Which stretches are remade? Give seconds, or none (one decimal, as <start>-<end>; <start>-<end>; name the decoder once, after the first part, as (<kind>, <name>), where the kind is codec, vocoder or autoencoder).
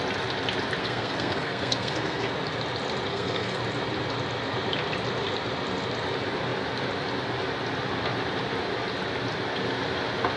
0.8-2.3 (codec, SNAC); 3.1-3.6